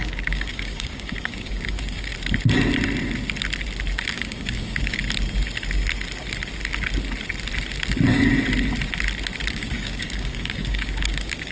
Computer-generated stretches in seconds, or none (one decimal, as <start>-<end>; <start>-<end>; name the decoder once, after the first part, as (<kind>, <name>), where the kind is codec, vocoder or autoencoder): 0.0-2.1 (codec, DAC); 4.1-5.0; 9.5-11.5